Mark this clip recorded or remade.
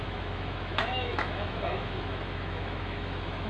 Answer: remade